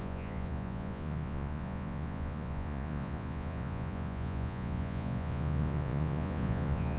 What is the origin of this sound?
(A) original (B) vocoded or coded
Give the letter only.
B